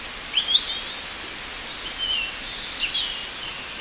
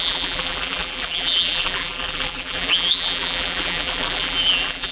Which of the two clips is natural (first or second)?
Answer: first